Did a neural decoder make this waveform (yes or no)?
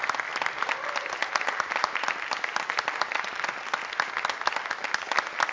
no